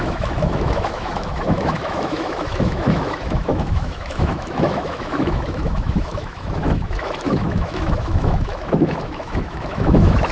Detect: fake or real fake